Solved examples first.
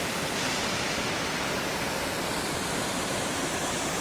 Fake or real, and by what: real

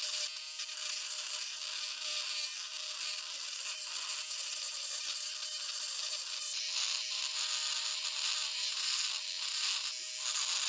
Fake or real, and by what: real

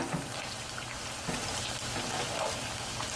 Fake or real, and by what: real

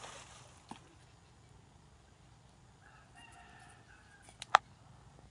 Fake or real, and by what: real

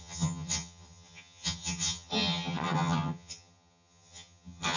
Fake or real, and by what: fake, vocoder, HiFi-GAN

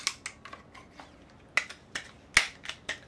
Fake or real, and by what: real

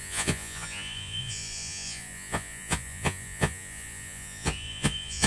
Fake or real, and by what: fake, vocoder, Vocos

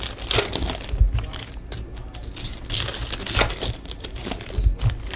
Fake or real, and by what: real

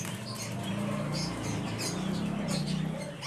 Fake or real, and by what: real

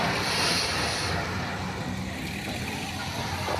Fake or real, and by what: fake, vocoder, BigVGAN v2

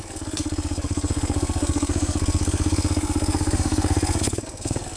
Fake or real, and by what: fake, codec, SNAC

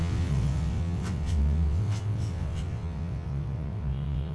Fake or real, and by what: fake, vocoder, WaveNeXt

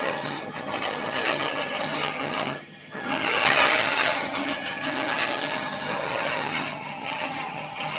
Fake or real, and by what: fake, vocoder, HiFi-GAN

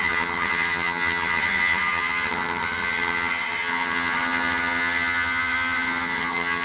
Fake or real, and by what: fake, vocoder, HiFi-GAN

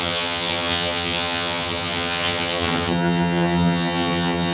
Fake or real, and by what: fake, vocoder, HiFi-GAN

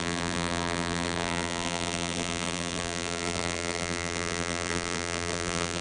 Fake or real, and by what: fake, vocoder, BigVGAN v2